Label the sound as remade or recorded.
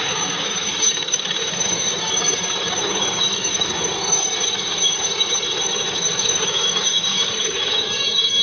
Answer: remade